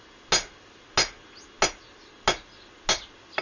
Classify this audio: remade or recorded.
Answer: recorded